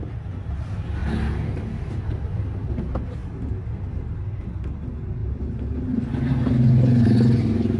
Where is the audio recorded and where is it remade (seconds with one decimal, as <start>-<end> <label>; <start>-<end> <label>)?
0.0-7.8 recorded